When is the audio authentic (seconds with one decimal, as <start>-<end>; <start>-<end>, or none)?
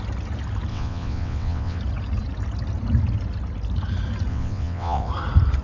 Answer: 0.0-0.7; 1.8-4.3; 5.1-5.6